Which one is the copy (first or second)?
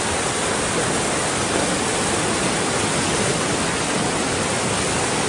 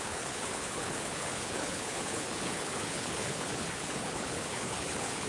second